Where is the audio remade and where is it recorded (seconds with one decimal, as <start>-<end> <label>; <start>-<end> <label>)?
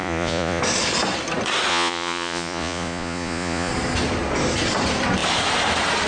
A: 0.0-0.6 remade; 0.6-1.7 recorded; 1.7-3.7 remade; 3.7-6.1 recorded